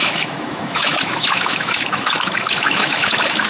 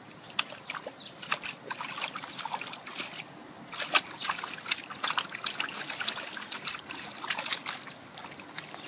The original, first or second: second